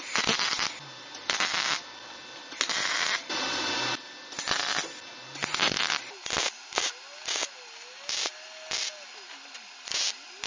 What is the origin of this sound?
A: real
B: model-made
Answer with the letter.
A